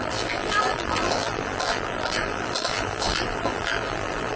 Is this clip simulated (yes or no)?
yes